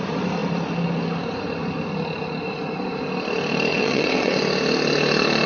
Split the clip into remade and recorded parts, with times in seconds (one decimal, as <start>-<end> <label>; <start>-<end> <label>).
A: 0.0-3.7 recorded; 3.7-4.4 remade; 4.4-5.5 recorded